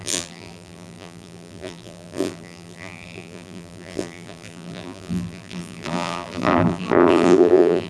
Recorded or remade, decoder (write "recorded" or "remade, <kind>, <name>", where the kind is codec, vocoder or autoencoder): remade, vocoder, BigVGAN v2